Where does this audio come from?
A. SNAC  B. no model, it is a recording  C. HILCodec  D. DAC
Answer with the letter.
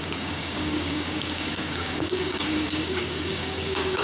D